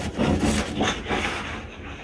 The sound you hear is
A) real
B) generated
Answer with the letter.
A